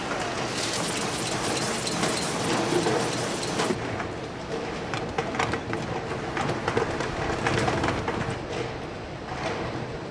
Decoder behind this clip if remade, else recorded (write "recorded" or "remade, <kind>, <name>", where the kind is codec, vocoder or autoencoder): recorded